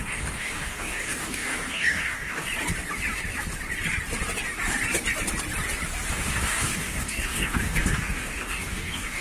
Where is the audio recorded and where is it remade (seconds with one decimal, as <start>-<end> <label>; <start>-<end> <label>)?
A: 0.0-2.5 remade; 2.5-6.1 recorded; 6.1-9.2 remade